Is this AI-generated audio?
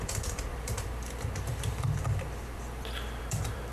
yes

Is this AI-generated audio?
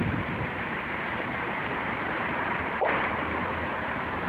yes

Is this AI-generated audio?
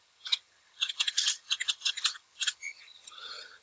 yes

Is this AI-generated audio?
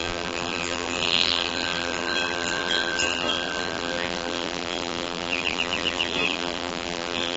yes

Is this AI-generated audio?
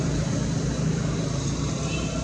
no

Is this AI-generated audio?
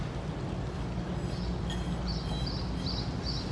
no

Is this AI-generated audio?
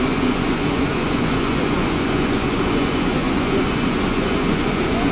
yes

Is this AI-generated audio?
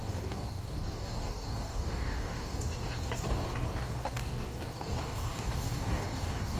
yes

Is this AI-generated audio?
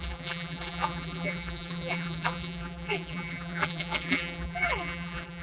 yes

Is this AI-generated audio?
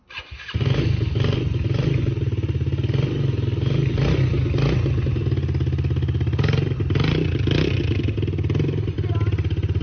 no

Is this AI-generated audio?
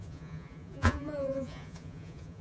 yes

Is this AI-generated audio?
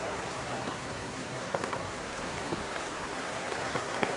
yes